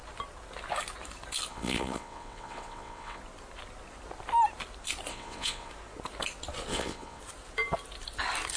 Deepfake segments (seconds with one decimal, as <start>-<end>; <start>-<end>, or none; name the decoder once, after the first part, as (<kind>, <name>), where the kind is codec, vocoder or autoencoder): 1.5-3.2 (vocoder, WaveNeXt); 5.1-5.7; 6.7-7.2